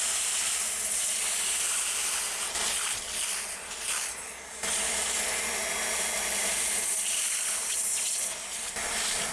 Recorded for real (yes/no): yes